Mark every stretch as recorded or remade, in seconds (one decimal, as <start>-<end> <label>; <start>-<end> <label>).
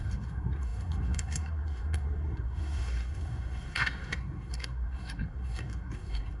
0.0-6.4 remade